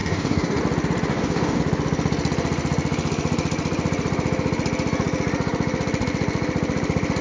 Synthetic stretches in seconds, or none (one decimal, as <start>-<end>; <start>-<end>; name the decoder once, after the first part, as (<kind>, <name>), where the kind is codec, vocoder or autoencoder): 0.0-0.6 (codec, DAC); 1.1-1.6